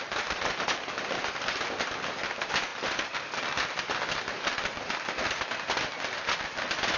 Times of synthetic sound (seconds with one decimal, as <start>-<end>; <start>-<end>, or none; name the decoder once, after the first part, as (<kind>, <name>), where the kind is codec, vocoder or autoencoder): none